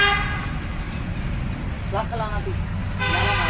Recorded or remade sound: recorded